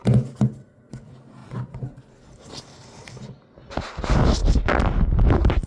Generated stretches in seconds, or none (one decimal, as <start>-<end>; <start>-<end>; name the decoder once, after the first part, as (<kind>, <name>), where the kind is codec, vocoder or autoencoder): 1.4-2.0 (vocoder, BigVGAN v2)